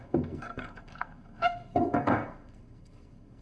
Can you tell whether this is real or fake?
fake